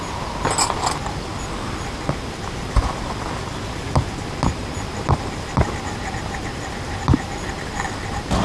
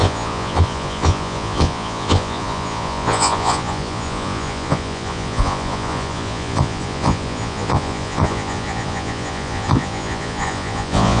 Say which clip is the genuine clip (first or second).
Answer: first